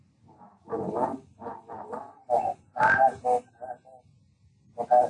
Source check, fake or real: real